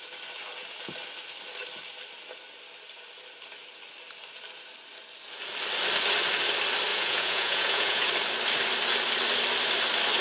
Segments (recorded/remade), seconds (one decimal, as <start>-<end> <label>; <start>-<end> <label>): 0.0-6.9 recorded; 6.9-8.1 remade; 8.1-10.2 recorded